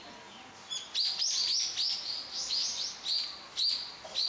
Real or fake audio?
real